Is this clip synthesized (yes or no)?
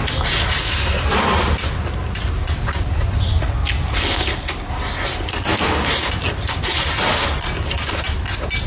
no